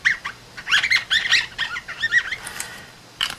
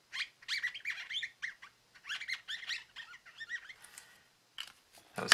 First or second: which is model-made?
first